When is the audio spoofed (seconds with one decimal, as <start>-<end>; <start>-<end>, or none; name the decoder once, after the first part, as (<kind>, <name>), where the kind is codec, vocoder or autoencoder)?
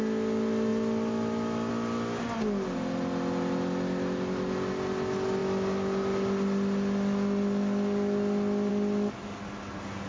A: none